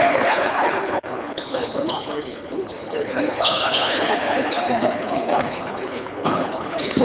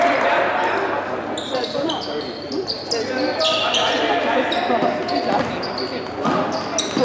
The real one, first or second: second